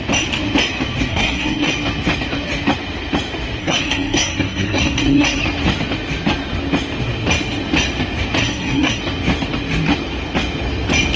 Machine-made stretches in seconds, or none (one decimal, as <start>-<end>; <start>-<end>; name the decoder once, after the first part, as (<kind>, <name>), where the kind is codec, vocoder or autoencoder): 1.1-1.7 (codec, SNAC); 3.6-5.4; 8.4-9.0